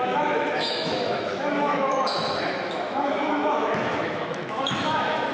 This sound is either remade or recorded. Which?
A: remade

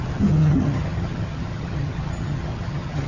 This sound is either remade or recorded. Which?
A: remade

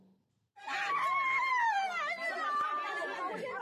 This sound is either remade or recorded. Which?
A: remade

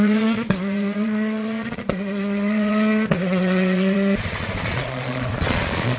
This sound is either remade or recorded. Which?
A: remade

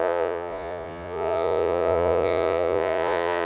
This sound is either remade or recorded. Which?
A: remade